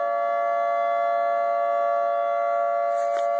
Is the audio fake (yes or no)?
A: no